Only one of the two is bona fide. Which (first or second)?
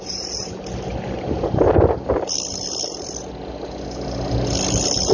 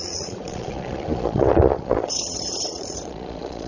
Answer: first